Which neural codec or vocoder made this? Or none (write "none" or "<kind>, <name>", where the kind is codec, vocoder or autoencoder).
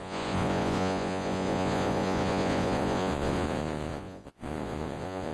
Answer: vocoder, Vocos